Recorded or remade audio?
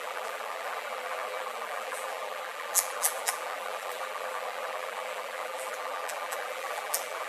remade